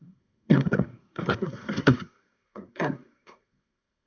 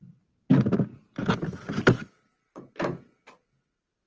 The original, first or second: second